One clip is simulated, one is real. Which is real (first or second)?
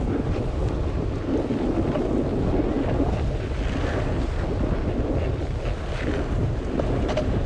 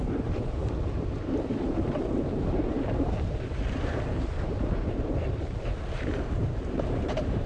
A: first